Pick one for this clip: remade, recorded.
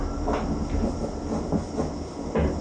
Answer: recorded